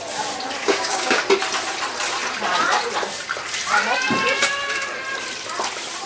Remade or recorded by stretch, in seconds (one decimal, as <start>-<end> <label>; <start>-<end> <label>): 0.0-0.6 recorded; 0.6-1.2 remade; 1.2-6.1 recorded